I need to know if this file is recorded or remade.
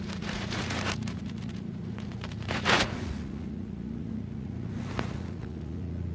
remade